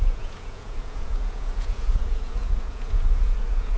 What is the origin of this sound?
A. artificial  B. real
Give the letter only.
A